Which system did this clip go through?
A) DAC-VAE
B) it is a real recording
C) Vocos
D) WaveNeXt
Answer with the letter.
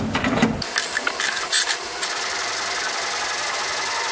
B